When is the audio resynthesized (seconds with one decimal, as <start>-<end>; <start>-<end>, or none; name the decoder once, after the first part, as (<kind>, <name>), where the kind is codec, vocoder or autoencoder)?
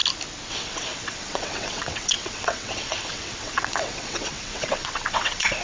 0.5-5.6 (vocoder, WaveNeXt)